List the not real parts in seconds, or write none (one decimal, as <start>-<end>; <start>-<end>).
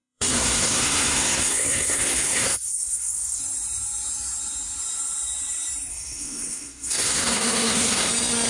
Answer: 0.0-3.4; 5.9-8.1